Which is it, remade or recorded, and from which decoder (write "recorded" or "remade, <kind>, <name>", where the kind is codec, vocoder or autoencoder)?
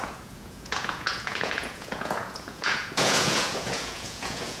remade, vocoder, Vocos